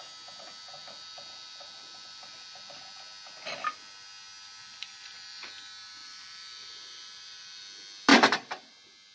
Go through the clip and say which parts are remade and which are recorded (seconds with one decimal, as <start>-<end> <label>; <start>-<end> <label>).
0.0-0.8 recorded; 0.8-2.8 remade; 2.8-4.6 recorded; 4.6-5.5 remade; 5.5-6.0 recorded; 6.0-7.6 remade; 7.6-8.1 recorded; 8.1-8.7 remade; 8.7-9.1 recorded